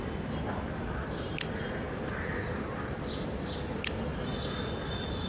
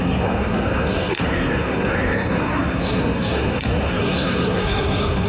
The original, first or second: first